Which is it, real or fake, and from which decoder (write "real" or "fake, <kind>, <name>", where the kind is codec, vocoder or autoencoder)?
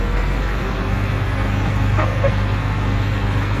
fake, codec, SNAC